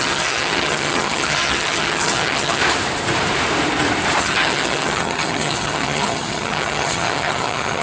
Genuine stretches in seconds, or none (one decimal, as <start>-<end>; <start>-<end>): 2.6-4.2